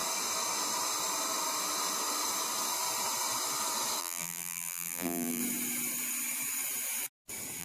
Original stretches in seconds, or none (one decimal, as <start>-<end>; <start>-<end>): 0.0-4.0; 5.4-7.6